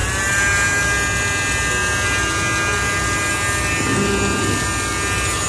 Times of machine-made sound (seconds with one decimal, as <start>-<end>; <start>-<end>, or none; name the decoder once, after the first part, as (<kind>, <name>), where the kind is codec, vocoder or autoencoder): none